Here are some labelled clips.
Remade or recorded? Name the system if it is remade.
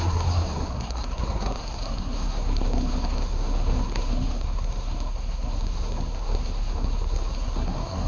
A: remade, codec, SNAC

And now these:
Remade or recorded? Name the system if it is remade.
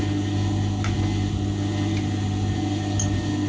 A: recorded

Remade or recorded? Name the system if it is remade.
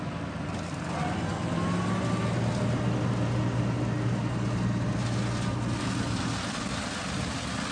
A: recorded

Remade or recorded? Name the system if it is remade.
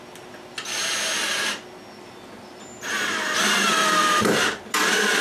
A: recorded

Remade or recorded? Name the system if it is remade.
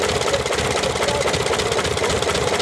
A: recorded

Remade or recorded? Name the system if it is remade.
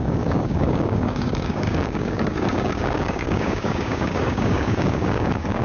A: remade, codec, DAC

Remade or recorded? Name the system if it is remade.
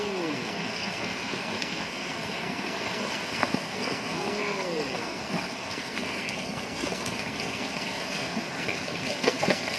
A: remade, codec, SNAC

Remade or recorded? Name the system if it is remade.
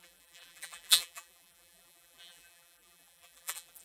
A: remade, vocoder, BigVGAN v2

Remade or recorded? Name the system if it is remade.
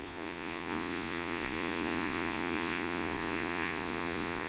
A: remade, vocoder, Vocos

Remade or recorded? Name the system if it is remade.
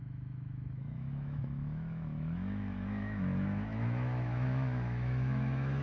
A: remade, autoencoder, DAC-VAE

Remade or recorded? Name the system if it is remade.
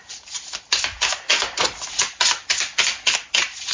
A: recorded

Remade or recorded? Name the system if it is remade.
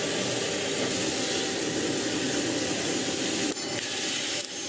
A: recorded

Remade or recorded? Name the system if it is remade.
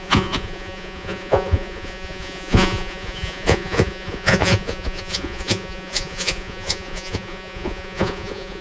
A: remade, vocoder, Vocos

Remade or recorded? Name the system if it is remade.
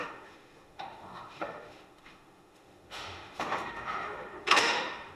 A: remade, autoencoder, DAC-VAE